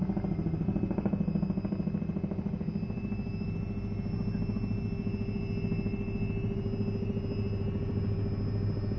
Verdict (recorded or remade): recorded